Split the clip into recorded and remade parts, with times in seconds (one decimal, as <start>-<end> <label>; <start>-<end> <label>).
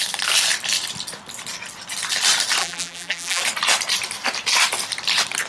0.0-2.6 recorded; 2.6-3.4 remade; 3.4-5.5 recorded